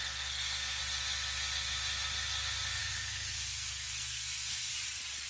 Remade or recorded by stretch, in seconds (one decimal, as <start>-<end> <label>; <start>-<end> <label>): 0.0-0.8 remade; 0.8-2.8 recorded; 2.8-4.7 remade; 4.7-5.3 recorded